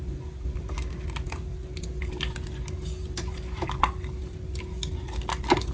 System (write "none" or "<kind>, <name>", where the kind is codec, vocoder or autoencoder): none